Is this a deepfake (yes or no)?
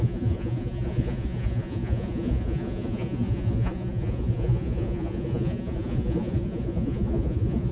yes